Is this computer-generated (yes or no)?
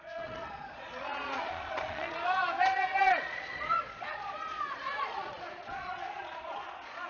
yes